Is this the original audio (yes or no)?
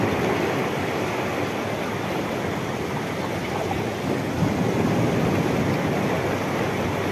yes